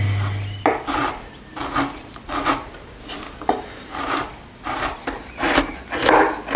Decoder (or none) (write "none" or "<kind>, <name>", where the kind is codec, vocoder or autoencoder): none